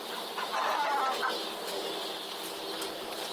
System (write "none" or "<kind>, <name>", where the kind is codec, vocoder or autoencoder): none